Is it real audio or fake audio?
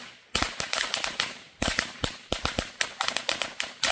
real